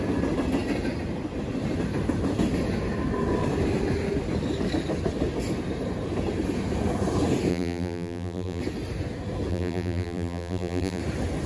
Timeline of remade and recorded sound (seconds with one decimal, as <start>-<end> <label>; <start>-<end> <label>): 0.0-7.5 recorded; 7.5-8.6 remade; 8.6-9.5 recorded; 9.5-11.0 remade; 11.0-11.5 recorded